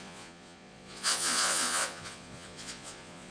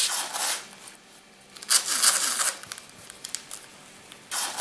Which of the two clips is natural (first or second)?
second